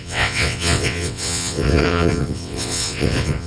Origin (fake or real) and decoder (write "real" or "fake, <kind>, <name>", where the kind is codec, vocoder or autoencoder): fake, vocoder, WaveNeXt